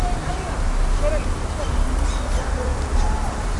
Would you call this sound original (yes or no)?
yes